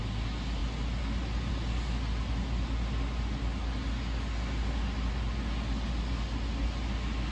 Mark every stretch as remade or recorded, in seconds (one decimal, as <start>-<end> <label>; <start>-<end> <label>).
0.0-7.3 recorded